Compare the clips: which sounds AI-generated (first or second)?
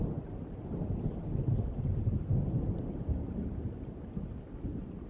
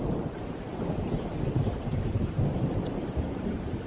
second